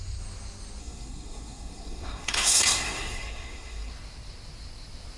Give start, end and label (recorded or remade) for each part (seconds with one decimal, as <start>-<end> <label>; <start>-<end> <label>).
0.0-0.8 recorded; 0.8-3.9 remade; 3.9-5.2 recorded

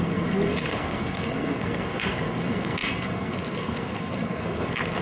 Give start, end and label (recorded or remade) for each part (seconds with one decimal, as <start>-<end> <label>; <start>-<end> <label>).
0.0-5.0 remade

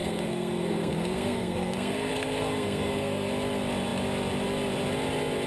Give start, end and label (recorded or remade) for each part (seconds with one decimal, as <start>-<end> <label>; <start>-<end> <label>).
0.0-3.3 remade; 3.3-5.5 recorded